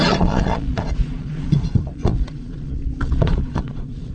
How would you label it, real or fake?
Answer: fake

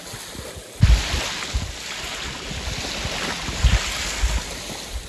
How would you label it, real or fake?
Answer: real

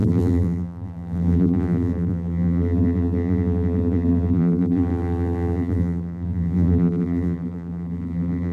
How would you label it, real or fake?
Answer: fake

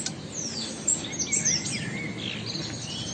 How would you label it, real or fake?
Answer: real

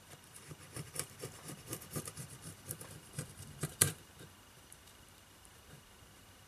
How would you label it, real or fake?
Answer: fake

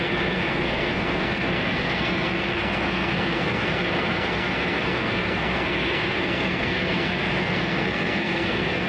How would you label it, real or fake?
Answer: fake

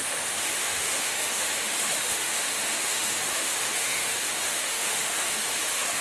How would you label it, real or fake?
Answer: fake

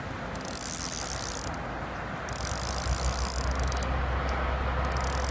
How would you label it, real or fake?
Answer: real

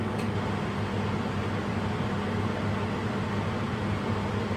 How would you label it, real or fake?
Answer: real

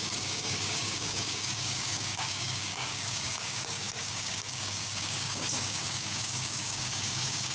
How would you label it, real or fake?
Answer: fake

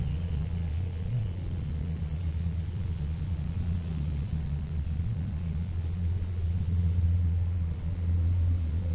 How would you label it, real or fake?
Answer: fake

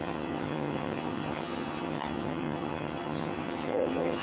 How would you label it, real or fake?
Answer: fake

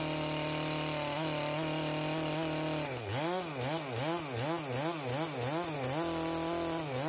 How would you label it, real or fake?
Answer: real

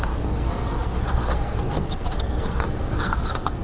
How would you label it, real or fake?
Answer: fake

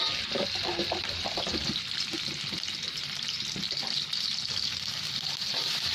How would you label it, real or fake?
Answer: real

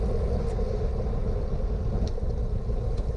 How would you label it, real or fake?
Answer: real